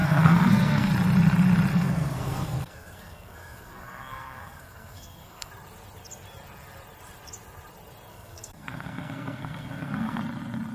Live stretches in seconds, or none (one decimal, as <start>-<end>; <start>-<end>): 0.9-1.7; 5.5-8.1; 10.2-10.7